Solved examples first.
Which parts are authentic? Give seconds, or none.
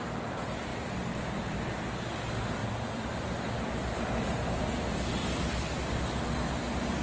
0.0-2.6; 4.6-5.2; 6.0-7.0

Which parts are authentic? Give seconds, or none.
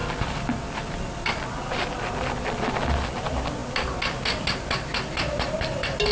0.0-6.1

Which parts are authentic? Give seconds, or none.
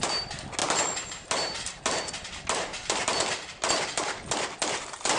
0.0-5.2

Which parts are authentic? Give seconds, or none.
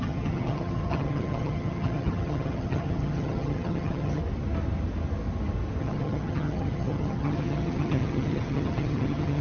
4.2-5.8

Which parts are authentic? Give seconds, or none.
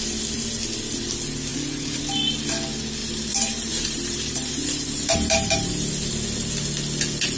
0.0-1.5; 2.0-3.0; 5.9-7.4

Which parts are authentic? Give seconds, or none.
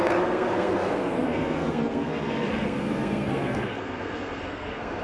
none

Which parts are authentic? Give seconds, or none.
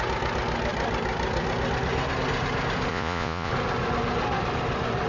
0.0-2.9; 3.5-5.1